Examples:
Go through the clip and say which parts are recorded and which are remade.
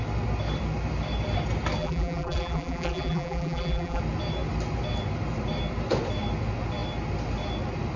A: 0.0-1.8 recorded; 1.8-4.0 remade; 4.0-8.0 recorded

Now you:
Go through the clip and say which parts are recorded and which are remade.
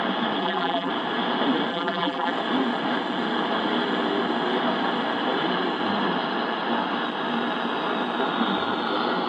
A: 0.0-0.4 recorded; 0.4-0.9 remade; 0.9-1.7 recorded; 1.7-2.3 remade; 2.3-9.3 recorded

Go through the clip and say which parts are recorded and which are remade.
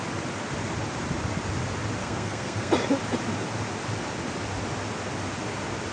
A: 0.0-2.0 recorded; 2.0-2.7 remade; 2.7-5.9 recorded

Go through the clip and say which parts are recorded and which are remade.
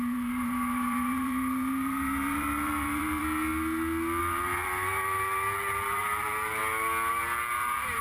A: 0.0-3.2 remade; 3.2-4.2 recorded; 4.2-6.6 remade; 6.6-7.1 recorded; 7.1-8.0 remade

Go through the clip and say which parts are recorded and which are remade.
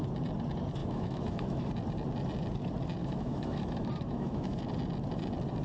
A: 0.0-0.8 recorded; 0.8-1.7 remade; 1.7-3.0 recorded; 3.0-4.6 remade; 4.6-5.6 recorded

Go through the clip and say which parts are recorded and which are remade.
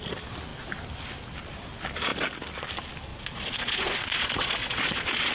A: 0.0-3.1 recorded; 3.1-5.3 remade